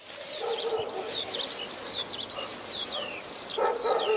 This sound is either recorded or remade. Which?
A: recorded